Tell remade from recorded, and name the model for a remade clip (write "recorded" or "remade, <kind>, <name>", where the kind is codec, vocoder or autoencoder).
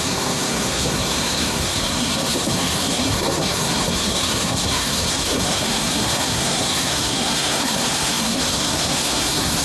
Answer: remade, codec, SNAC